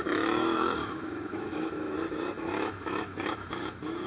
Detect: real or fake fake